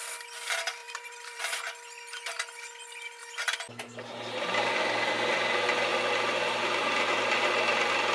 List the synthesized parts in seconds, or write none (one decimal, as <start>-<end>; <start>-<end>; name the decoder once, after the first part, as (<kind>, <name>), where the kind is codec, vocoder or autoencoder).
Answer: 0.8-1.4 (vocoder, BigVGAN v2); 5.9-6.8